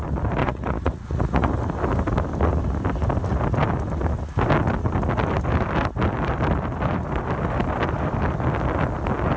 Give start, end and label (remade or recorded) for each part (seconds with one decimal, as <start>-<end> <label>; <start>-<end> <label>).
0.0-0.4 recorded; 0.4-1.5 remade; 1.5-9.4 recorded